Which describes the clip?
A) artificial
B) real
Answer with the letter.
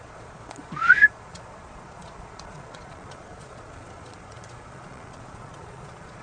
A